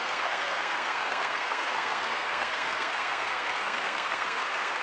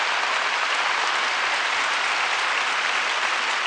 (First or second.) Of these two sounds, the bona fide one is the second